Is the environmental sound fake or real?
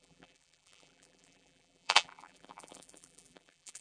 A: fake